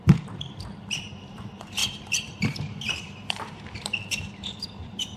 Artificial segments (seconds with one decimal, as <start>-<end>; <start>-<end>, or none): 0.0-5.2